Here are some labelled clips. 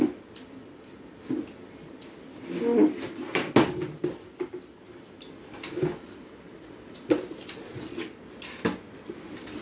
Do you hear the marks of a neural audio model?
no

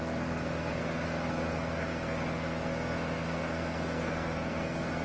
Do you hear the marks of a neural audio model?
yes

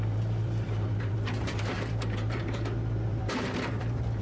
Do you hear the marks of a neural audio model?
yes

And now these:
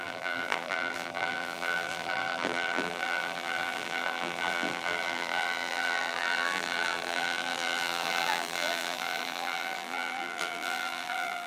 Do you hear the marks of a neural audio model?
yes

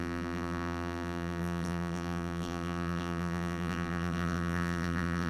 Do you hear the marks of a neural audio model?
yes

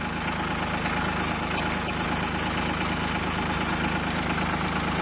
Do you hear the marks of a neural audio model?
no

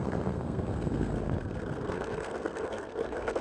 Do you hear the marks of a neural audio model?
yes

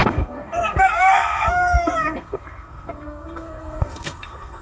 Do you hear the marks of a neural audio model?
yes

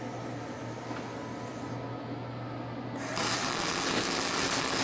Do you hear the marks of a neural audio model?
no